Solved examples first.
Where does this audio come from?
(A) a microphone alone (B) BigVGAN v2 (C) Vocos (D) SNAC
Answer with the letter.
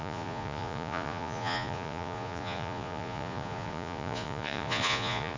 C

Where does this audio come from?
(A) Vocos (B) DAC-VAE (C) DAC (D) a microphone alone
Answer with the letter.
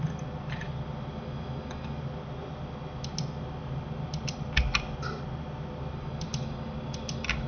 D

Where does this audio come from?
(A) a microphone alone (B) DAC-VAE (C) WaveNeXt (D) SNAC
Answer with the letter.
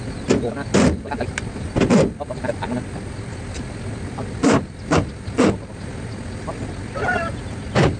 A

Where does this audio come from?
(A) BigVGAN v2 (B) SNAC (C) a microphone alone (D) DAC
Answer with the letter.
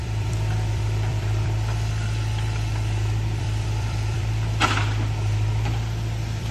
A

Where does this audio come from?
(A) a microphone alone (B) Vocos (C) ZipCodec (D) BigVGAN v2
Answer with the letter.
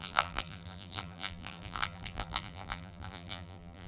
D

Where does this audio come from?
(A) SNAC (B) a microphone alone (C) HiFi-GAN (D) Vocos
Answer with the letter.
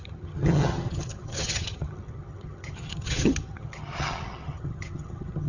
C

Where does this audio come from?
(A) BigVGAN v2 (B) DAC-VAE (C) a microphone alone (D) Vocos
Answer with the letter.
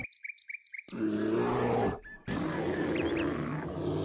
C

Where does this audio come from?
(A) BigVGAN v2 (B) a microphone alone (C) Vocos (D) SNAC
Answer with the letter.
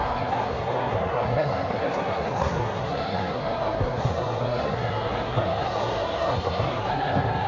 D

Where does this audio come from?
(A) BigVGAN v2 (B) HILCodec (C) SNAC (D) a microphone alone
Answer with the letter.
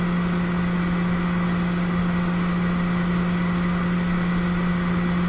D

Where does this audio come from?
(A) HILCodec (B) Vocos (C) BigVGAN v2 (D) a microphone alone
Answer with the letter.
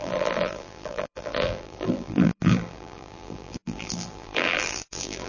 C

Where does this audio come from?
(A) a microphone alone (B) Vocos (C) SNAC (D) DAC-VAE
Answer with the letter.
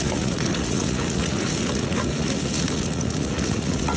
B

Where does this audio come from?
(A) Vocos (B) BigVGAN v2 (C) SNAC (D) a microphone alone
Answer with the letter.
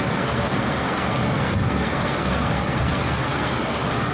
C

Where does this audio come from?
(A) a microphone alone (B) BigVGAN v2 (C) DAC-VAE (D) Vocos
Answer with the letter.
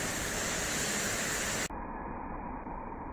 A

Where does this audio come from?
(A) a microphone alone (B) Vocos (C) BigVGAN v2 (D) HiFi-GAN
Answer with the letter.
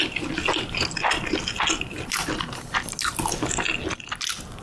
A